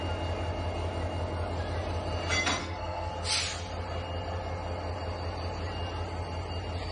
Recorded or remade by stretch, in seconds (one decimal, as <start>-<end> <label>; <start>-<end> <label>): 0.0-2.6 recorded; 2.6-3.1 remade; 3.1-6.9 recorded